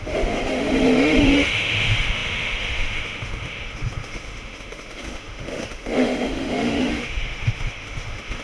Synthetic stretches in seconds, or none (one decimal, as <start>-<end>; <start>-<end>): 0.0-8.4